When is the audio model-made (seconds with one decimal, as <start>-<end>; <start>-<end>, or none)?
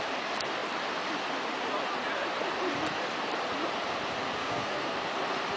4.4-5.0